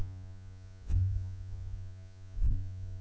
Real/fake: fake